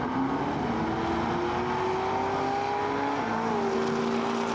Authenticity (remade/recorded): recorded